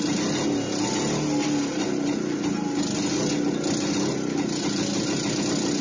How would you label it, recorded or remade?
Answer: recorded